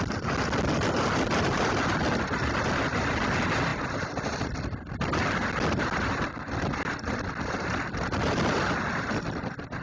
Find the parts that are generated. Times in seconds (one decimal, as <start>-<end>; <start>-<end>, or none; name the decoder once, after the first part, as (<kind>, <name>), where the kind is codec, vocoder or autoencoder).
none